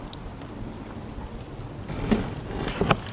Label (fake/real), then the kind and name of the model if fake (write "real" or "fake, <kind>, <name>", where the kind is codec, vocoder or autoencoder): real